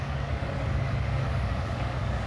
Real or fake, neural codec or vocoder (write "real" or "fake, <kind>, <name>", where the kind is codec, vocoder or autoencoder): fake, codec, DAC